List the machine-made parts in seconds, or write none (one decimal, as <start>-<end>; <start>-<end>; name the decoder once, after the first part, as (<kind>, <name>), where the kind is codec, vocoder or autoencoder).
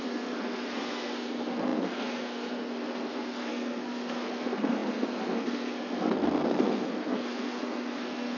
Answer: 0.0-8.4 (codec, SNAC)